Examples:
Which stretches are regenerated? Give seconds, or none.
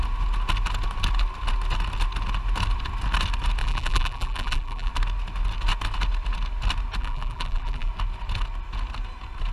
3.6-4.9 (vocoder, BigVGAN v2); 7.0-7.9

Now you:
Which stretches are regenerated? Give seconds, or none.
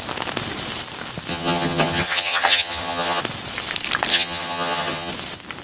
1.3-3.2 (vocoder, HiFi-GAN); 4.1-5.1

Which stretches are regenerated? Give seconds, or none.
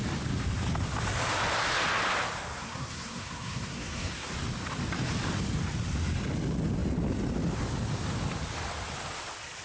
2.5-4.3 (codec, SNAC)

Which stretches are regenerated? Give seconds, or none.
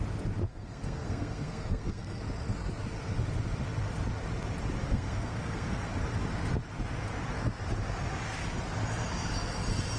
0.5-2.2 (codec, SNAC); 4.8-5.9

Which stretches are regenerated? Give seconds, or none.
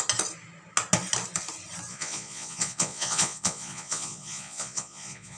1.9-5.4 (vocoder, Vocos)